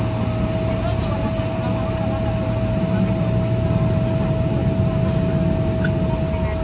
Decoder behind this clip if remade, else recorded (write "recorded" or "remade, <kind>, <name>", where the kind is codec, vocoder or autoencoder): recorded